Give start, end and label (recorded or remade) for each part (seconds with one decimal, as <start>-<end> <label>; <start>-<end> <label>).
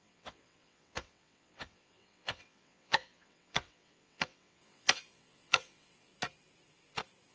0.0-6.1 remade; 6.1-7.3 recorded